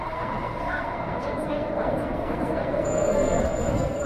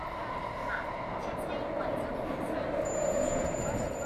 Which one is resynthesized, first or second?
first